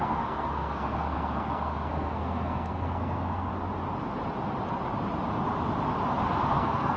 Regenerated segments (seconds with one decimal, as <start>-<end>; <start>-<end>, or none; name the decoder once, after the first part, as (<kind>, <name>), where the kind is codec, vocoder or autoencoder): 0.0-3.5 (codec, SNAC); 6.5-7.0